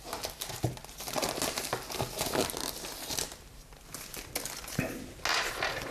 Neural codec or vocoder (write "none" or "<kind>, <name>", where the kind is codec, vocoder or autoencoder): none